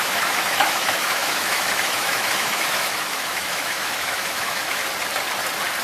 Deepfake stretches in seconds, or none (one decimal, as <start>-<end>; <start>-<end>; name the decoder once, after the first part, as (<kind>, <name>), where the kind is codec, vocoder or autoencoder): 0.0-4.8 (autoencoder, DAC-VAE)